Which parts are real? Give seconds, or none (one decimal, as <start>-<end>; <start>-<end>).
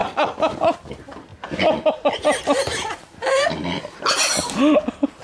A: 0.0-5.2